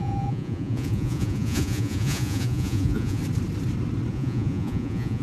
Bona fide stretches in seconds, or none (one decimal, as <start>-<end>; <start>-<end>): 3.2-4.1